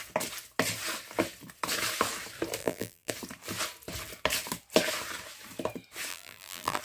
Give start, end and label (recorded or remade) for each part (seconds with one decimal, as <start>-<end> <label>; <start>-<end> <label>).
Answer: 0.0-2.6 recorded; 2.6-3.1 remade; 3.1-6.1 recorded; 6.1-6.8 remade